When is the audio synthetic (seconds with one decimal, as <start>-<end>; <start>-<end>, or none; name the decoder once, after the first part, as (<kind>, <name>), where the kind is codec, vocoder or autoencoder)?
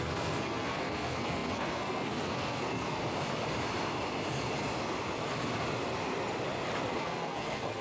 0.0-3.0 (codec, SNAC); 7.0-7.8